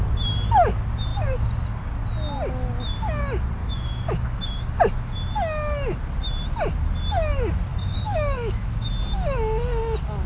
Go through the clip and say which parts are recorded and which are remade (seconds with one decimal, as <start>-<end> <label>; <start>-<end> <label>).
0.0-3.6 recorded; 3.6-4.7 remade; 4.7-7.7 recorded; 7.7-8.9 remade; 8.9-10.3 recorded